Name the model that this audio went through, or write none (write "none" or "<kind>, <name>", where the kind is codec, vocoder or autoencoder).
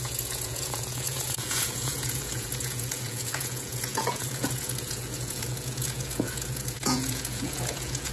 vocoder, Vocos